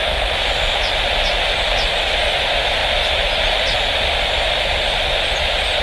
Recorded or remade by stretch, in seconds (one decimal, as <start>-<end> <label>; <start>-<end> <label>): 0.0-5.8 recorded